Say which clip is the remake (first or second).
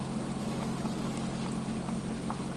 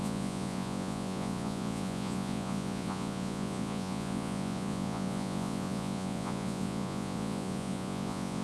second